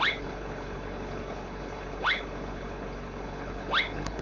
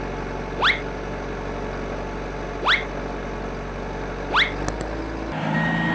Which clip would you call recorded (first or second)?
second